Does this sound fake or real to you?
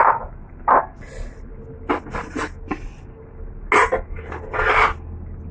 real